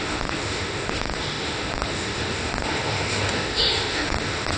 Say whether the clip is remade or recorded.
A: remade